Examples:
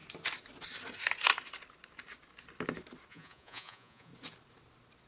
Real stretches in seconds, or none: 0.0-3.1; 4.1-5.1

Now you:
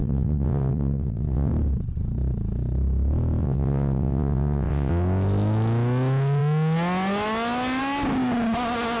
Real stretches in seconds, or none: 1.5-3.4; 4.9-9.0

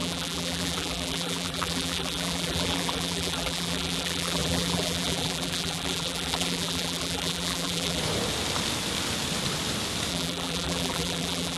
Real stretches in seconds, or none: 8.0-10.1

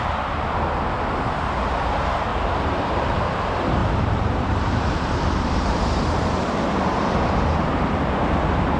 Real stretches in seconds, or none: 0.0-2.3; 3.3-3.8; 8.0-8.8

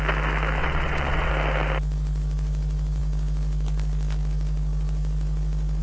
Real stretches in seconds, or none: 0.0-0.6; 1.3-5.8